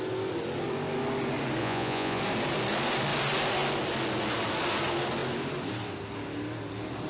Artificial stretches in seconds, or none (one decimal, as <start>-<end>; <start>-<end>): 1.6-2.2